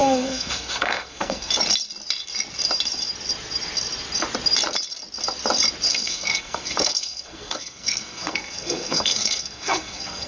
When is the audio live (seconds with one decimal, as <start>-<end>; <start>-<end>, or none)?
1.5-5.9